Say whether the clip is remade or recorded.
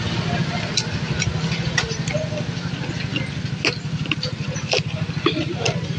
recorded